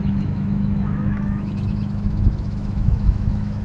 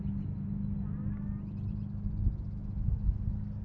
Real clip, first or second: second